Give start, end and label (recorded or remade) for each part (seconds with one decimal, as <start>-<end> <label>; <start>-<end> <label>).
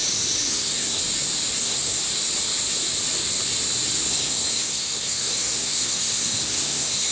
0.0-0.5 recorded; 0.5-1.0 remade; 1.0-1.6 recorded; 1.6-2.0 remade; 2.0-4.1 recorded; 4.1-7.1 remade